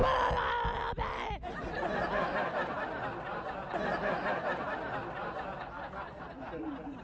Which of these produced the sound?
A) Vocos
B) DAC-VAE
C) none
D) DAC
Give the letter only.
C